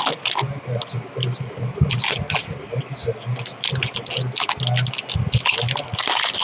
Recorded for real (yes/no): yes